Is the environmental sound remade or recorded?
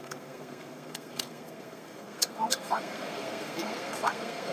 remade